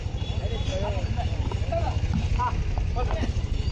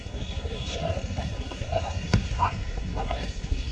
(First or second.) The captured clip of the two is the first